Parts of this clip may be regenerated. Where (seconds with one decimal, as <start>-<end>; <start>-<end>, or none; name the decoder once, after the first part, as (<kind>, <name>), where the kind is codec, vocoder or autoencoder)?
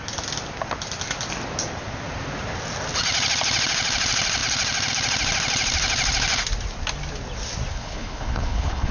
7.7-8.9 (codec, HILCodec)